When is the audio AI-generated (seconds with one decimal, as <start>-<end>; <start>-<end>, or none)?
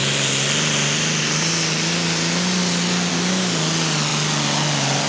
none